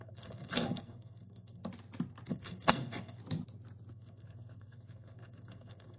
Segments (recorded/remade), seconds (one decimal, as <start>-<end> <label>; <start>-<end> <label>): 0.0-1.6 remade; 1.6-2.3 recorded; 2.3-3.2 remade; 3.2-3.9 recorded; 3.9-6.0 remade